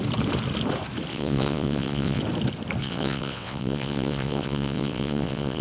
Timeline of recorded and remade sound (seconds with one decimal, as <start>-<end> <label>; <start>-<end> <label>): 0.0-1.1 recorded; 1.1-2.2 remade; 2.2-2.8 recorded; 2.8-5.6 remade